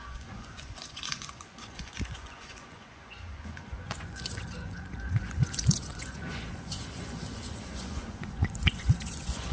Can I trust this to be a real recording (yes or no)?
no